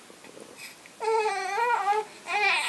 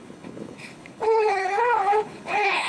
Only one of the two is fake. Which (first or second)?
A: second